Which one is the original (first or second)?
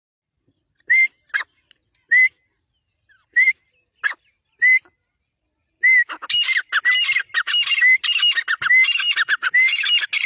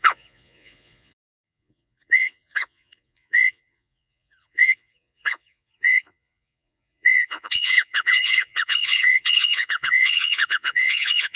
first